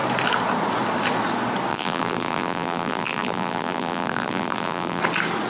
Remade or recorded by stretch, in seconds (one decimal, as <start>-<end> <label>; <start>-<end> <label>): 0.0-1.7 recorded; 1.7-5.0 remade; 5.0-5.5 recorded